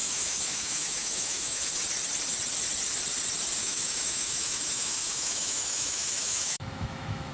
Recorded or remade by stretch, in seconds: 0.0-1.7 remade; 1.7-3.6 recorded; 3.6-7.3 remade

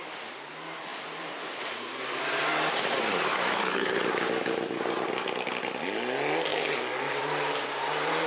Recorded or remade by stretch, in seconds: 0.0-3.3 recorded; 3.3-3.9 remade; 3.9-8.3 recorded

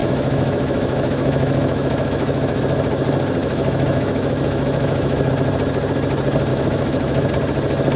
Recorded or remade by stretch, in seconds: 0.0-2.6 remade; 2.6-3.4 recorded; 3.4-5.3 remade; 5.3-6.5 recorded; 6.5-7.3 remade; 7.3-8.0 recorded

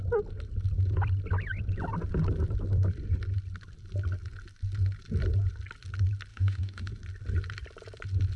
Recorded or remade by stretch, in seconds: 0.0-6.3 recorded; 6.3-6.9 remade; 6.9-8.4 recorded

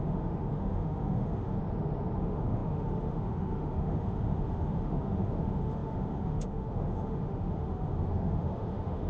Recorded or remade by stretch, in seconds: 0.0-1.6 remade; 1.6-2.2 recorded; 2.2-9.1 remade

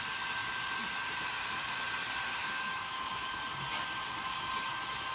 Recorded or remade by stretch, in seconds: 0.0-2.4 recorded; 2.4-3.5 remade; 3.5-5.1 recorded